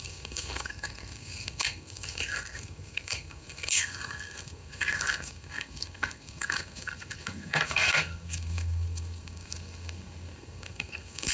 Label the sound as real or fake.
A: fake